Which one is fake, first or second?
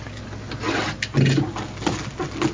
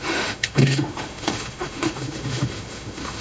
second